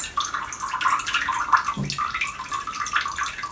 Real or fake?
real